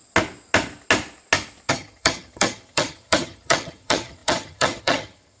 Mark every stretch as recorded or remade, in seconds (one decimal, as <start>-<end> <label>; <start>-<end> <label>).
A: 0.0-1.7 recorded; 1.7-5.4 remade